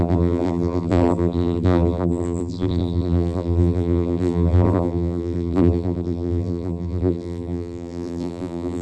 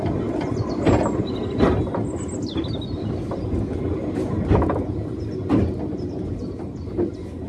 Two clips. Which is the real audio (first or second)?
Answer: second